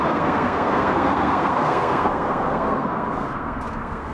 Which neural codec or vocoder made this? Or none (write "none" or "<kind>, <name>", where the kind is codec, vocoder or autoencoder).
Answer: codec, SNAC